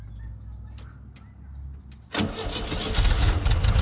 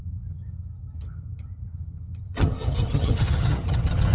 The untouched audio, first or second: first